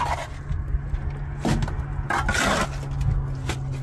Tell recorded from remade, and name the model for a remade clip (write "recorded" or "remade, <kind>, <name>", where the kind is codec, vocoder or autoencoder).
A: recorded